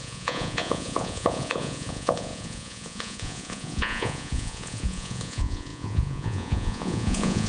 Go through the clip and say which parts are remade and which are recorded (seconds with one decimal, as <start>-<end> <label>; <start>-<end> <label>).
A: 0.0-7.5 remade